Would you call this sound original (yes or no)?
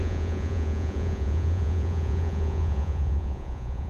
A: no